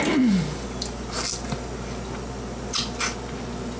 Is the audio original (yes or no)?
yes